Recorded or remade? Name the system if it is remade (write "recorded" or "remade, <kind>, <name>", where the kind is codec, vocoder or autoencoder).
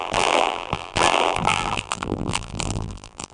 remade, vocoder, BigVGAN v2